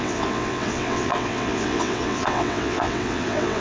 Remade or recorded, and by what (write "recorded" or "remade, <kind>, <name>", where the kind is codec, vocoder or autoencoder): remade, vocoder, WaveNeXt